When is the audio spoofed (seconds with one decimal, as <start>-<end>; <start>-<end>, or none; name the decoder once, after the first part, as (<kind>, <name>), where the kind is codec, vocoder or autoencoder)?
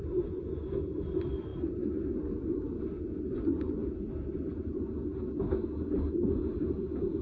none